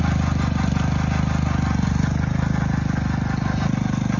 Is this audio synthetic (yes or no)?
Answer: no